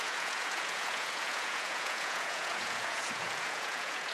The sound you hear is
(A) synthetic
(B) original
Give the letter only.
A